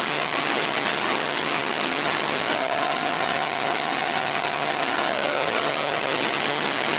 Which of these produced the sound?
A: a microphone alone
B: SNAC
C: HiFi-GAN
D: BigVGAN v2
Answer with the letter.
C